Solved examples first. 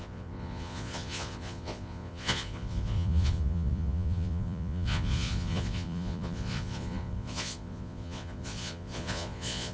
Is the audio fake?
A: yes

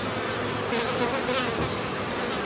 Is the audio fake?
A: no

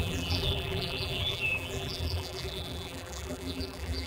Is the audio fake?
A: yes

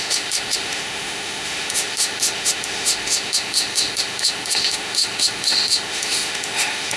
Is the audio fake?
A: yes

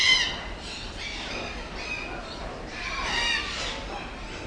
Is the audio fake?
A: no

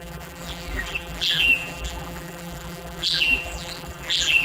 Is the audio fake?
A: yes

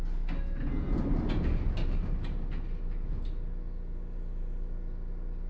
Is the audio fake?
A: no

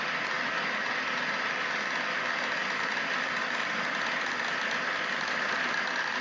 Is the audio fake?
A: no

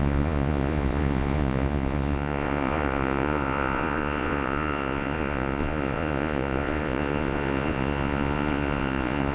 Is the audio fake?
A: yes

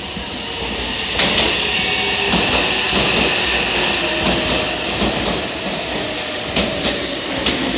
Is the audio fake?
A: no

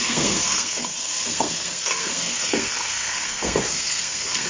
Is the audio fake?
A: yes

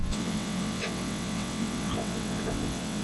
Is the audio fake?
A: yes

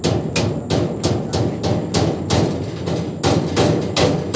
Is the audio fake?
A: no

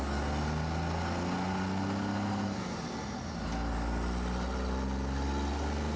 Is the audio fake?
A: no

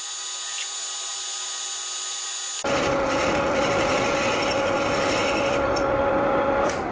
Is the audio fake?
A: no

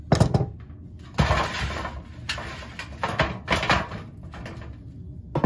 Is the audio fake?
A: no